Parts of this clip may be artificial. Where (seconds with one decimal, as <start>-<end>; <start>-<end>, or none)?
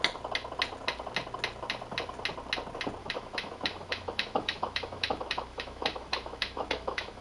3.0-7.2